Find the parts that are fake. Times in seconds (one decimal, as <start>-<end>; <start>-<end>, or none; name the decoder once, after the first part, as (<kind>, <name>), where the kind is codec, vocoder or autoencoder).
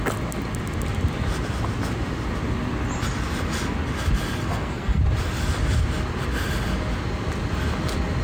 4.4-5.0 (codec, SNAC)